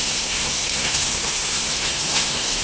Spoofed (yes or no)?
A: yes